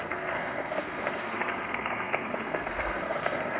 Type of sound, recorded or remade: remade